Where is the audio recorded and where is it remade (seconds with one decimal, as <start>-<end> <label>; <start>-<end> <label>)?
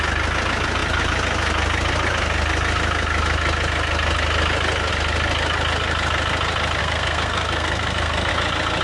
0.0-6.8 recorded; 6.8-8.3 remade; 8.3-8.8 recorded